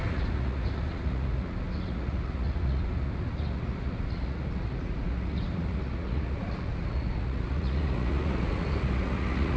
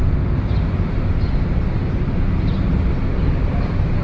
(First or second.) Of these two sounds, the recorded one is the second